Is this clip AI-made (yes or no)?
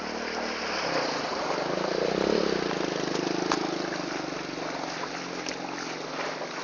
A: no